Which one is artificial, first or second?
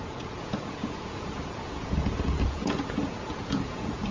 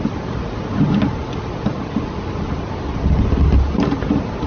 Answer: first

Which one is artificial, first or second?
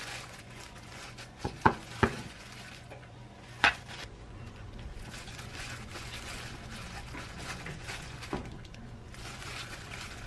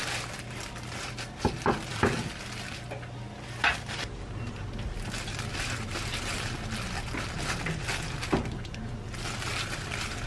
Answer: first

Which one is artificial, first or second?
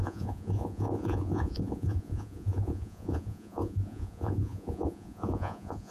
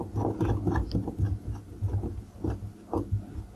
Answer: first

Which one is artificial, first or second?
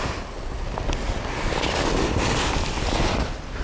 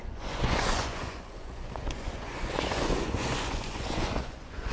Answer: second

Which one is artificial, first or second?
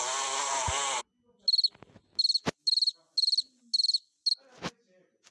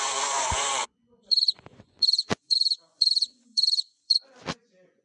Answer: second